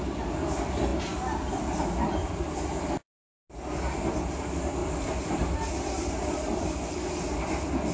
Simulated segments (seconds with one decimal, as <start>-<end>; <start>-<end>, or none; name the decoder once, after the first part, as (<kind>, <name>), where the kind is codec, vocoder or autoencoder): none